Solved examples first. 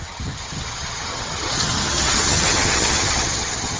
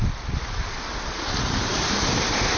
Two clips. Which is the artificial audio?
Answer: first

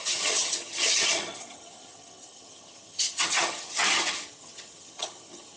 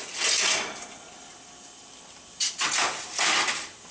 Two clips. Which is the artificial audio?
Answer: first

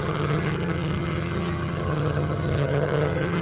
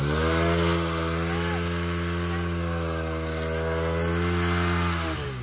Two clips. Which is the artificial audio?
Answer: first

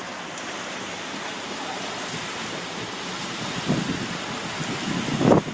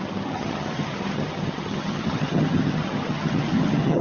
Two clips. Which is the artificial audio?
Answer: second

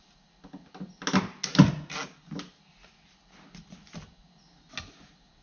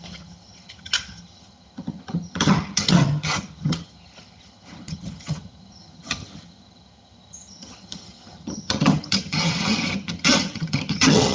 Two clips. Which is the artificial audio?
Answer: second